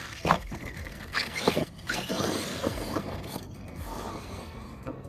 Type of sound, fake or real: fake